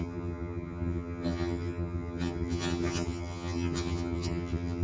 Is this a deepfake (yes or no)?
yes